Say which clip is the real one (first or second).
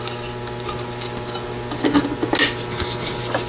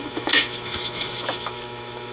first